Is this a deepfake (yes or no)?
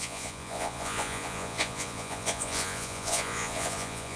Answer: yes